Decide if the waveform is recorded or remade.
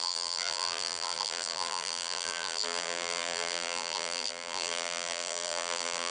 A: remade